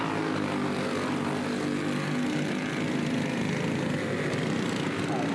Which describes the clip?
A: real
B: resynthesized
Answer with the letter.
A